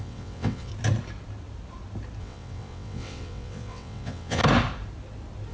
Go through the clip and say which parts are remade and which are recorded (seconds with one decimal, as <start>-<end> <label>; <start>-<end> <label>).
0.0-0.7 remade; 0.7-2.2 recorded; 2.2-4.4 remade; 4.4-5.5 recorded